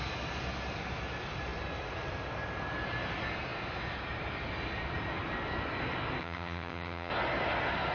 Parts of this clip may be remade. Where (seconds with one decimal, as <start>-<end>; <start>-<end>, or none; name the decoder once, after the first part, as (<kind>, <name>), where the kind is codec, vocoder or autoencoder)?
6.2-7.1 (vocoder, HiFi-GAN)